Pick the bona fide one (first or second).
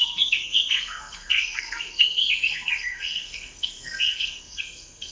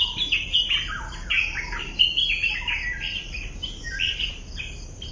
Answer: second